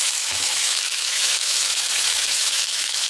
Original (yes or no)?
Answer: no